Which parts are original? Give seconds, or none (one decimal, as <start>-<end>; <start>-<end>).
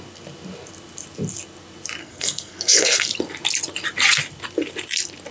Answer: 0.0-2.0; 3.1-5.3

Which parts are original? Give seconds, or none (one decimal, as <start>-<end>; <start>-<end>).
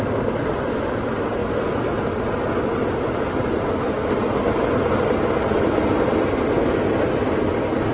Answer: 0.0-7.9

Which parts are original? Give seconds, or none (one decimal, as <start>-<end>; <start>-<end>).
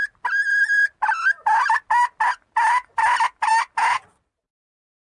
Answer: 0.0-5.1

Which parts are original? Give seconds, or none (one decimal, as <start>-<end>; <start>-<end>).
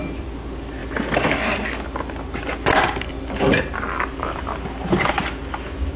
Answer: 0.0-6.0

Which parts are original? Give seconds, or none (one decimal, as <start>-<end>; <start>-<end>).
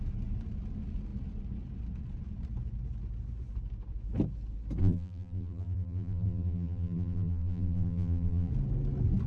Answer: 0.0-4.8; 8.5-9.3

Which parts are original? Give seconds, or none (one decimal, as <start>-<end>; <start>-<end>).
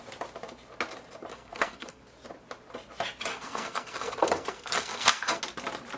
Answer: 0.0-1.3; 2.0-3.3; 5.4-6.0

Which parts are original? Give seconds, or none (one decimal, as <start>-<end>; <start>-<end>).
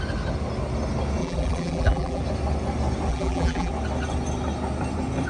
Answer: 0.0-1.2; 2.2-3.1; 3.7-5.3